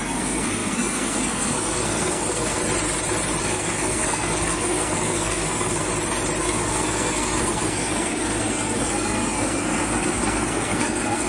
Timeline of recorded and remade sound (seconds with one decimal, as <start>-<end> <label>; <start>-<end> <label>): 0.0-2.6 remade; 2.6-3.4 recorded; 3.4-5.9 remade; 5.9-6.4 recorded; 6.4-11.3 remade